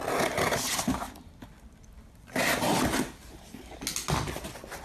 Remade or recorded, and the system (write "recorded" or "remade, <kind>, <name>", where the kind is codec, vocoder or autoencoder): recorded